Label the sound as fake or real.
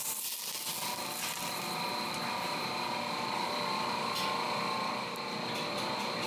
real